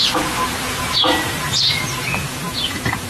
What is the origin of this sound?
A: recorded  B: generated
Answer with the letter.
B